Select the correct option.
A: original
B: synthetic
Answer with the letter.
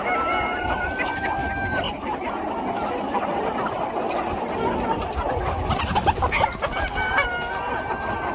A